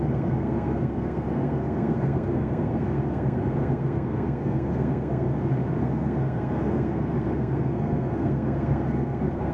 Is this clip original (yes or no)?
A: no